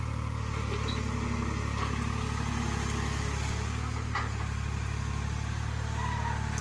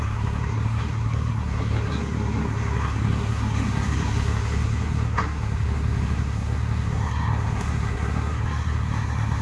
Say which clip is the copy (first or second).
second